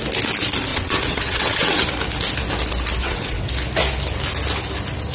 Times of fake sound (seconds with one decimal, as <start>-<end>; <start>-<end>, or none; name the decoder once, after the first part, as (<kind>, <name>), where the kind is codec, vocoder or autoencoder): 0.7-1.8 (vocoder, WaveNeXt); 3.0-3.5